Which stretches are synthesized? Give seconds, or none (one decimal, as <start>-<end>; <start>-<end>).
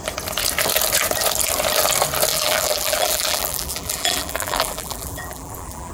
2.3-5.9